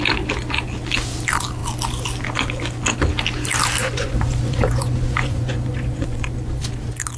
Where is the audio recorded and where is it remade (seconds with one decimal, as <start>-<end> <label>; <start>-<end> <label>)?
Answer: 0.0-3.8 recorded; 3.8-6.6 remade; 6.6-7.2 recorded

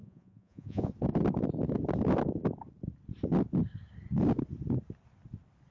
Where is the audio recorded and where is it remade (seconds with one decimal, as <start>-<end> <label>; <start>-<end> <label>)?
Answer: 0.0-0.9 remade; 0.9-5.7 recorded

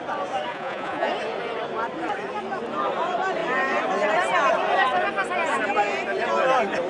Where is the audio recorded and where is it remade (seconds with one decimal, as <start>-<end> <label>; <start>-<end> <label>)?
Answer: 0.0-0.5 recorded; 0.5-1.1 remade; 1.1-6.9 recorded